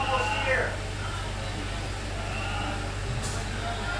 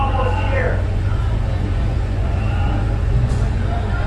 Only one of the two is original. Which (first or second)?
first